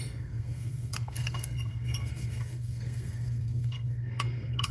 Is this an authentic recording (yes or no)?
no